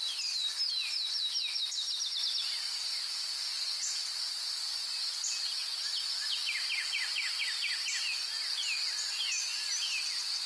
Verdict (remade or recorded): recorded